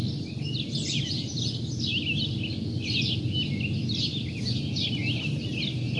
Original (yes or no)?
yes